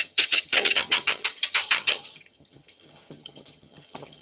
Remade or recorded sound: remade